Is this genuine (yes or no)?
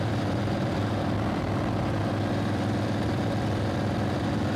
no